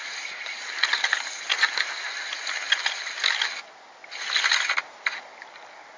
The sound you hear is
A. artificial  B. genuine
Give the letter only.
B